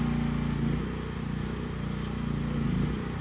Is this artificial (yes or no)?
no